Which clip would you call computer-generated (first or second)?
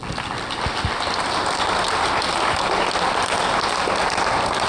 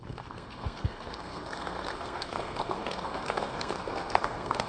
second